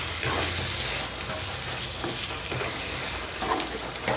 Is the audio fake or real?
real